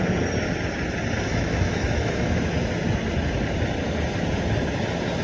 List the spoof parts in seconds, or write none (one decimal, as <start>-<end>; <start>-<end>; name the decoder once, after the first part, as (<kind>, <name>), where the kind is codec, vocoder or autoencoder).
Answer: 1.3-2.4 (autoencoder, DAC-VAE)